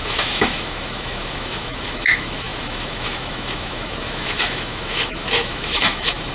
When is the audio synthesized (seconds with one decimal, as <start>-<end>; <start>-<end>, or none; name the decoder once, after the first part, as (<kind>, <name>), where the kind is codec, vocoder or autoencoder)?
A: 0.0-6.3 (autoencoder, DAC-VAE)